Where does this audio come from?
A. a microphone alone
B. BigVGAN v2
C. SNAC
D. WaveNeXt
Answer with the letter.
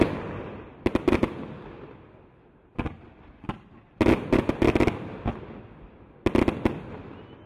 A